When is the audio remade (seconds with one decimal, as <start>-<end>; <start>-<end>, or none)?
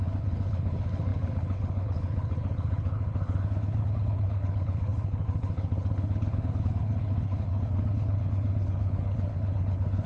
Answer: 0.0-10.1